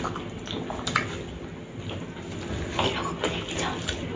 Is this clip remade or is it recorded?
recorded